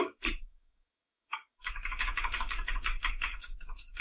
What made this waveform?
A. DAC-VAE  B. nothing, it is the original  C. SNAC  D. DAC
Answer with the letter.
D